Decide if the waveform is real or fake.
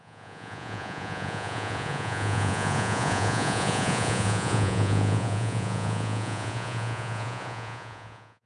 fake